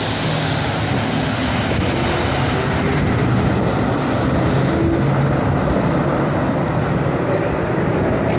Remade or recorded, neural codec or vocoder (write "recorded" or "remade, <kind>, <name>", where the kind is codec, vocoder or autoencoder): recorded